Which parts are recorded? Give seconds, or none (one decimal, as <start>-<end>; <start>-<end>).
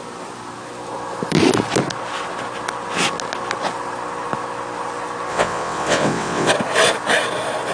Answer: 0.0-5.3; 6.5-7.7